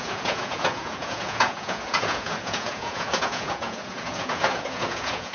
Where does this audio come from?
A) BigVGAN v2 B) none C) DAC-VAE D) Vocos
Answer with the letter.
D